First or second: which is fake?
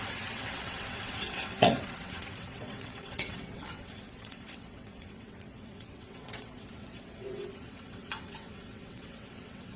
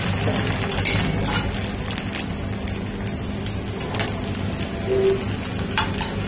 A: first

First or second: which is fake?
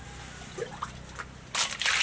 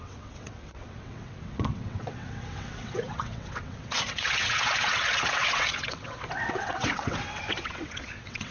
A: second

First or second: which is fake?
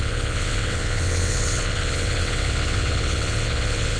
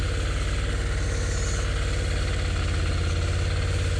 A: first